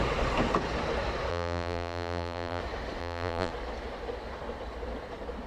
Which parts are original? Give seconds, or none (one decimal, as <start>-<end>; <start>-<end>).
0.0-1.3; 2.6-3.0; 3.5-5.5